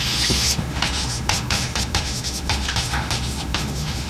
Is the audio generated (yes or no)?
yes